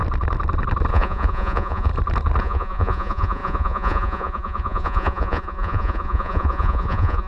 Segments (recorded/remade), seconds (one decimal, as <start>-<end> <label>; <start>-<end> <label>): 0.0-0.9 recorded; 0.9-1.9 remade; 1.9-2.4 recorded; 2.4-7.3 remade